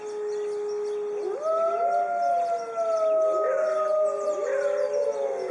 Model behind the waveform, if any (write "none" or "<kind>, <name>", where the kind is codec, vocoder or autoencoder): none